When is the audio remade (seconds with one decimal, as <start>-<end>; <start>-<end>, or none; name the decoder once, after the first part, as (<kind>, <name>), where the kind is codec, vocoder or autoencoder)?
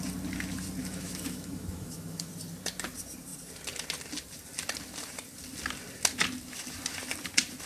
0.8-2.3 (autoencoder, DAC-VAE)